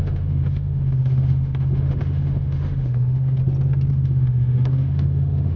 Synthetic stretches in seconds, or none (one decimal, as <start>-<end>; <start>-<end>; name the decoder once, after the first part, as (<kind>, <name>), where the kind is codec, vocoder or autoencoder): 0.0-3.4 (autoencoder, DAC-VAE); 3.9-5.6